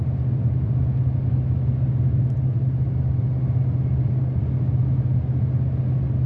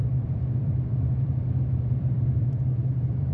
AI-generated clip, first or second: second